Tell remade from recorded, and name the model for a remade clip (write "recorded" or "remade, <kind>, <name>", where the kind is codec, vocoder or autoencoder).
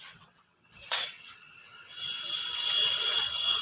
remade, vocoder, WaveNeXt